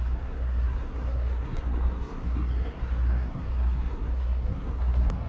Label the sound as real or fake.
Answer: fake